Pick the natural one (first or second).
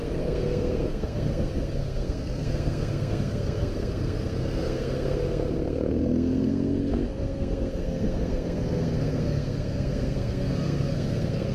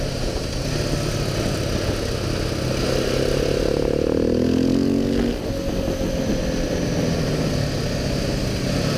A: second